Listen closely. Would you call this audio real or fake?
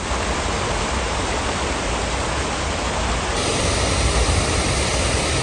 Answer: real